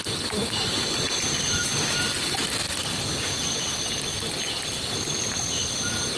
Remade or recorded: recorded